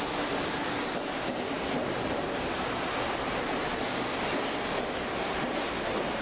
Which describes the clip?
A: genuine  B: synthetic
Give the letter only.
A